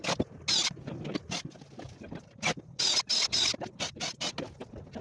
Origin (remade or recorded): recorded